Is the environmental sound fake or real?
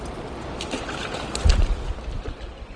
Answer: real